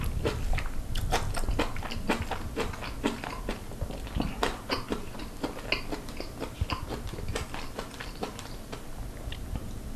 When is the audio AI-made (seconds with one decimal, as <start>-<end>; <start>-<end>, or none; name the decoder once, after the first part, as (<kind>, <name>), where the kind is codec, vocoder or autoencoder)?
none